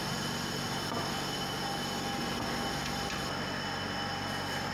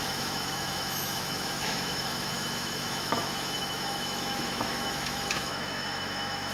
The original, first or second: first